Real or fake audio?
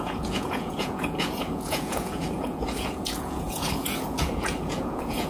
fake